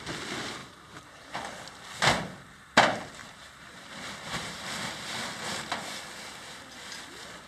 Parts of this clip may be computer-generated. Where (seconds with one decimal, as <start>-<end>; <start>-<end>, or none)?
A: 0.6-1.3; 3.2-4.5